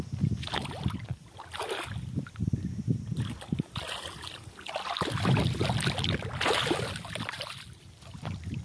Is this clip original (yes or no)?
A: yes